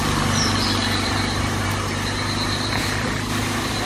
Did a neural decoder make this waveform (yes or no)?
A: no